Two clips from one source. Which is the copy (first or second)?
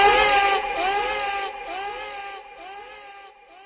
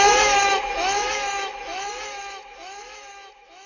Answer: second